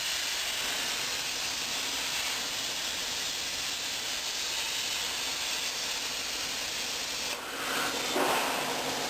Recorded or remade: recorded